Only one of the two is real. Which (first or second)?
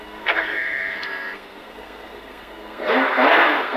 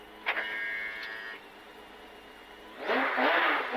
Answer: second